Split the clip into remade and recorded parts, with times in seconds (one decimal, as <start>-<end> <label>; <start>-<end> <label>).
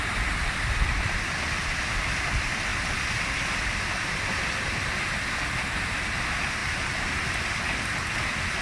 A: 0.0-8.6 recorded